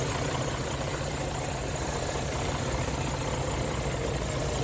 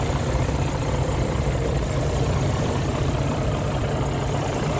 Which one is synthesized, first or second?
second